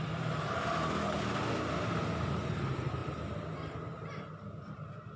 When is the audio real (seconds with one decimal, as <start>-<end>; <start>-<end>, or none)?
0.0-2.5; 3.0-4.6